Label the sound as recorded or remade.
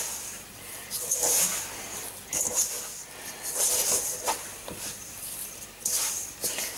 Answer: recorded